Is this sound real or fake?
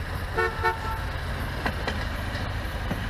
real